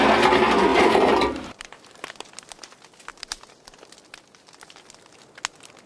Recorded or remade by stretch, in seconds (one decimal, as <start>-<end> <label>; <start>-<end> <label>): 0.0-0.7 recorded; 0.7-2.0 remade; 2.0-3.1 recorded; 3.1-3.6 remade; 3.6-5.9 recorded